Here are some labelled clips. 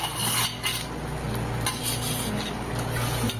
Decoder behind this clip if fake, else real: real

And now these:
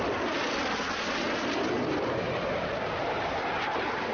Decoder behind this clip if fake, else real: real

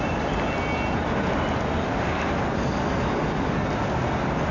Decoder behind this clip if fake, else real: real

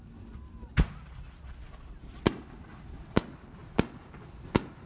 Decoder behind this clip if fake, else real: real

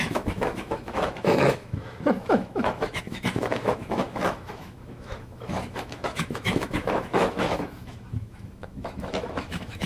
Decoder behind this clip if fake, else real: fake, autoencoder, DAC-VAE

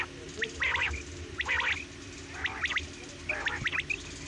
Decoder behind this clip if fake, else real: real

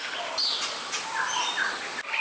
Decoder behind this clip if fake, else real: real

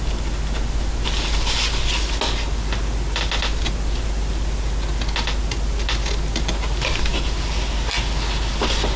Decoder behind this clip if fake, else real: real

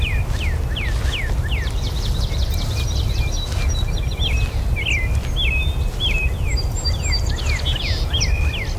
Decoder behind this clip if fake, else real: real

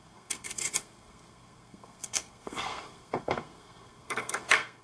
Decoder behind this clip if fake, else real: fake, codec, SNAC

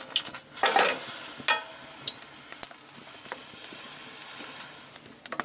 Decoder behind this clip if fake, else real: real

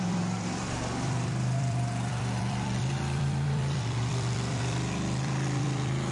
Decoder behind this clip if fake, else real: fake, vocoder, BigVGAN v2